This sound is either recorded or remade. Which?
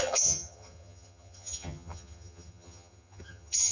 remade